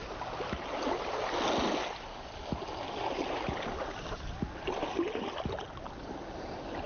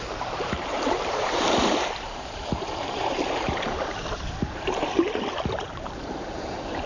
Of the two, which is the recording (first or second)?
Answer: first